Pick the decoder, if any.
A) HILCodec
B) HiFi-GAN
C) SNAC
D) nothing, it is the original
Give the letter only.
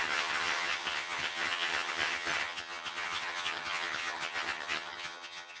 B